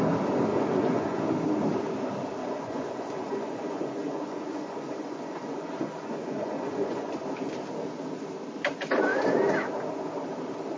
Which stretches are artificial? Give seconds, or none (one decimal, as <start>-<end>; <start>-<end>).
0.5-1.2; 2.4-7.1